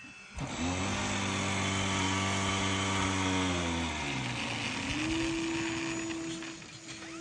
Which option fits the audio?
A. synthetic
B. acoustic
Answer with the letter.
B